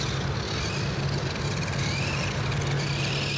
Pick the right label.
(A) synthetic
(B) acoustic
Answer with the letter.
B